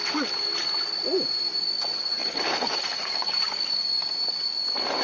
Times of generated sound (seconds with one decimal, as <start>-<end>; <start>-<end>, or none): 2.2-4.1